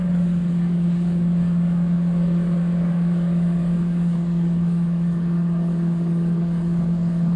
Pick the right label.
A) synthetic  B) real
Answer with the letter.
A